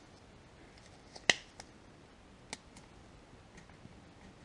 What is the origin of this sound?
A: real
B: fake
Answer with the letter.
A